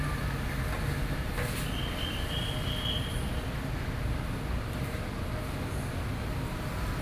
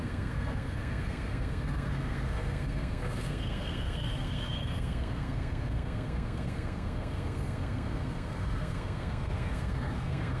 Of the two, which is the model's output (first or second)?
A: second